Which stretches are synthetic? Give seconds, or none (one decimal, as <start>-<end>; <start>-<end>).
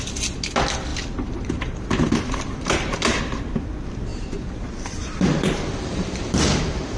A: 0.9-3.2; 4.1-7.0